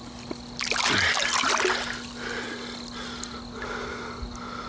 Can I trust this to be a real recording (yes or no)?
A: yes